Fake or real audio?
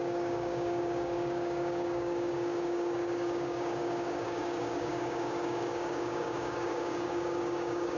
fake